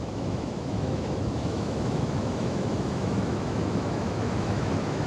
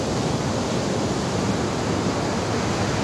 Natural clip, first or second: second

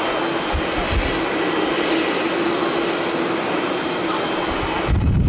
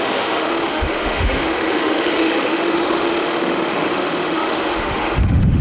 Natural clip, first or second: first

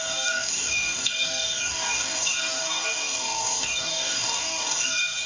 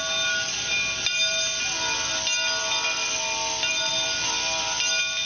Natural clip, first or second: second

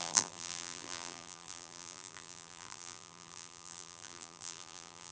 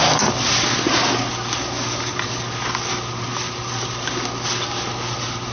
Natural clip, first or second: second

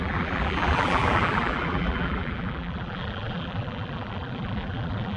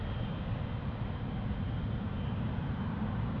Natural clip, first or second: second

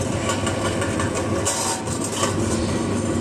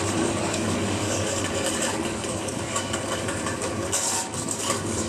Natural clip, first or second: first